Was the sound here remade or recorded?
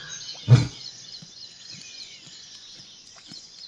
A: remade